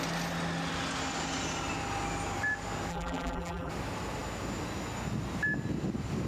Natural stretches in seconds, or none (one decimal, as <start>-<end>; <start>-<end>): 0.0-2.9; 3.7-6.3